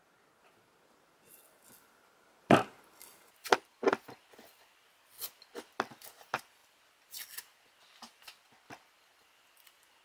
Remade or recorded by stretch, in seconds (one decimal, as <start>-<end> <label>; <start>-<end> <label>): 0.0-10.0 recorded